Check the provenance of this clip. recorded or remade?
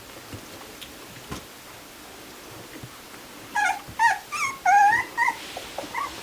recorded